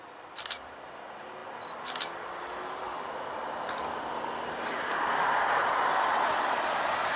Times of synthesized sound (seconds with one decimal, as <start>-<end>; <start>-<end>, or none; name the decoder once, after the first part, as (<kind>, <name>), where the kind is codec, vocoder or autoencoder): none

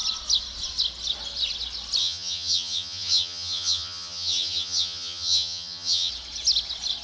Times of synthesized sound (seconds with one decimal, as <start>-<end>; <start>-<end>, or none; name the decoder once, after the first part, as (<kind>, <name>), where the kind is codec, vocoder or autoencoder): 2.0-6.1 (vocoder, HiFi-GAN)

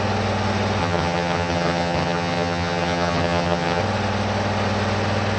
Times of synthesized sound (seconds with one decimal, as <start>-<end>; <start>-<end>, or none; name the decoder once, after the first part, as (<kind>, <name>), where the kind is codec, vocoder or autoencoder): 0.8-3.8 (vocoder, HiFi-GAN)

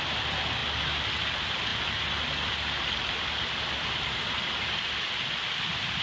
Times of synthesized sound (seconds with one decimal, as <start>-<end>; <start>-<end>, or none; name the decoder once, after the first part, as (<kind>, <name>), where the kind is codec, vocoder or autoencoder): none

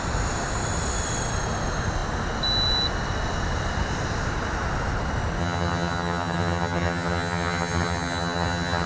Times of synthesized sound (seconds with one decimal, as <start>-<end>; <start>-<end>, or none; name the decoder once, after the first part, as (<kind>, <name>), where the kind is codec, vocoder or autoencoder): 5.4-8.9 (vocoder, HiFi-GAN)

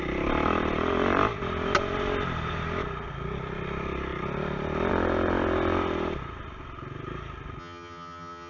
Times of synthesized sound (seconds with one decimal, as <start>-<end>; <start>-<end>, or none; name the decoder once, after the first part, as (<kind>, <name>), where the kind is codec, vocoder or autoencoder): 7.6-8.5 (vocoder, HiFi-GAN)

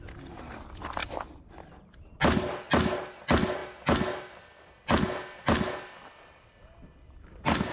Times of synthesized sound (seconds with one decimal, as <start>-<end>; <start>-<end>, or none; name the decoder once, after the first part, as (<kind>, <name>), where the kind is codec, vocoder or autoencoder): none

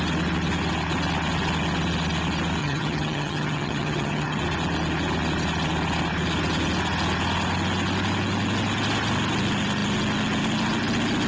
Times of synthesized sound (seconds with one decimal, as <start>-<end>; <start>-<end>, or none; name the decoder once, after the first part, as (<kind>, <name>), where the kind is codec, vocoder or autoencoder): 2.6-4.4 (vocoder, HiFi-GAN)